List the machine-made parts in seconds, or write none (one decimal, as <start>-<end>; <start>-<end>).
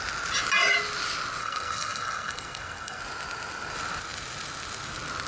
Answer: 1.4-3.0